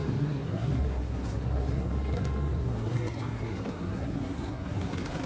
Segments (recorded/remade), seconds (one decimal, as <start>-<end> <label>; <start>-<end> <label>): 0.0-5.3 remade